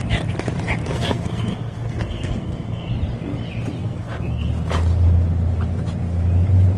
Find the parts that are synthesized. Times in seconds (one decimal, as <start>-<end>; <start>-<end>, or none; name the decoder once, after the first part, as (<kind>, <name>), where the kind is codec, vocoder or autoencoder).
0.8-2.9 (codec, SNAC); 3.8-4.5